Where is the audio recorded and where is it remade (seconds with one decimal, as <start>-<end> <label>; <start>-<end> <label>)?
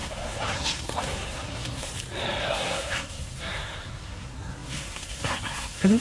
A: 0.0-1.9 remade; 1.9-2.4 recorded; 2.4-6.0 remade